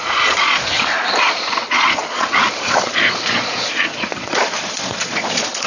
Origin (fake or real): fake